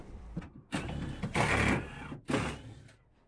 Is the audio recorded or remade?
recorded